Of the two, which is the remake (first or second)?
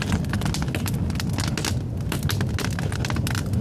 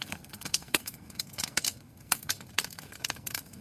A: second